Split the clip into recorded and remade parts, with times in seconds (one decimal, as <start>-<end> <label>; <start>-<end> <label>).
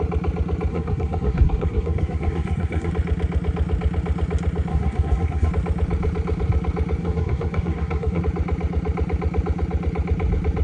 0.0-0.7 recorded; 0.7-2.9 remade; 2.9-4.7 recorded; 4.7-5.5 remade; 5.5-7.0 recorded; 7.0-8.2 remade; 8.2-10.6 recorded